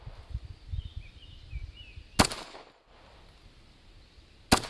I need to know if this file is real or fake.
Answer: real